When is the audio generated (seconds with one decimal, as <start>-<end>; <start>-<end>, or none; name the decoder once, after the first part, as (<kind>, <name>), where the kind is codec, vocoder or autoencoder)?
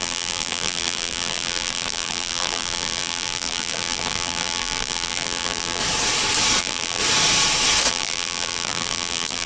0.0-5.8 (vocoder, BigVGAN v2); 6.6-7.0; 7.9-9.5